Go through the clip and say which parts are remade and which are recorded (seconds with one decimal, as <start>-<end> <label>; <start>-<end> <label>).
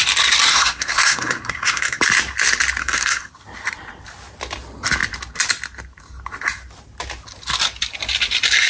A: 0.0-0.5 recorded; 0.5-2.0 remade; 2.0-2.8 recorded; 2.8-3.3 remade; 3.3-8.7 recorded